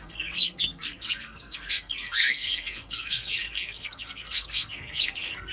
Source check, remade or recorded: remade